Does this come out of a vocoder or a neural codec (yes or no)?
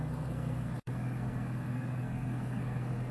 yes